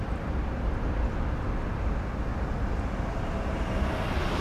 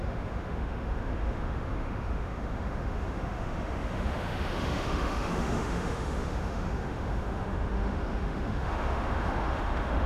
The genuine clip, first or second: first